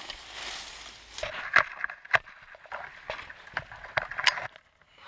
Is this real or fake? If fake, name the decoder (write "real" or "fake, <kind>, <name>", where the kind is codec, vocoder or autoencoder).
real